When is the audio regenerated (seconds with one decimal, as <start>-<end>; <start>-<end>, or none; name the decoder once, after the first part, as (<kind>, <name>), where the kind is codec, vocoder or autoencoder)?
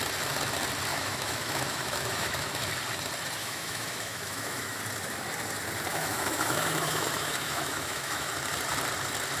0.9-2.5 (autoencoder, DAC-VAE); 3.4-4.8; 5.9-8.3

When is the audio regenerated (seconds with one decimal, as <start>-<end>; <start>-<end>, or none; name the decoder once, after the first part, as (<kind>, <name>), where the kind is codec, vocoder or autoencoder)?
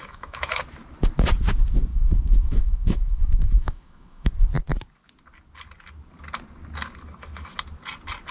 0.0-0.6 (autoencoder, DAC-VAE); 1.9-4.3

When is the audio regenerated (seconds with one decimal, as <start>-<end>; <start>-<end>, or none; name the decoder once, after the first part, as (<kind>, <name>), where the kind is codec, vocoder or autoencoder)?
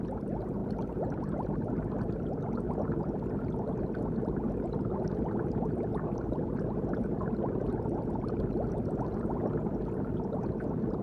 none